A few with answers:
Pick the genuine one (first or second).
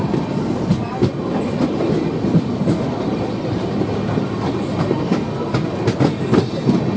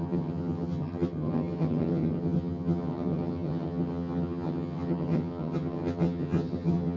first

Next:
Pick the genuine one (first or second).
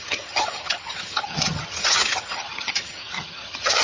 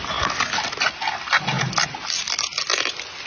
second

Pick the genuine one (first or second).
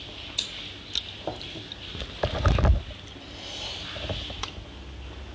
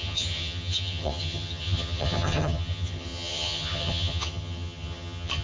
first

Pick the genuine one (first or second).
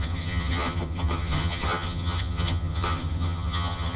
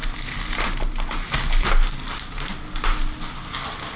second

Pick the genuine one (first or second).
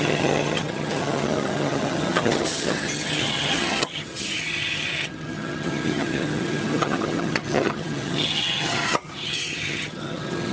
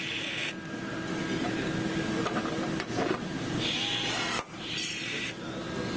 second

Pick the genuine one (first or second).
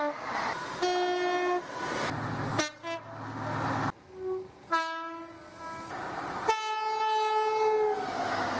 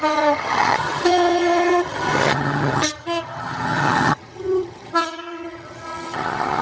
first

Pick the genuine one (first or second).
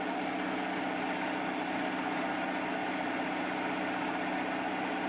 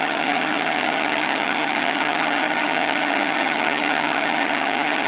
first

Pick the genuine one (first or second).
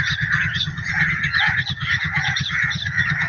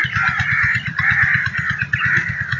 second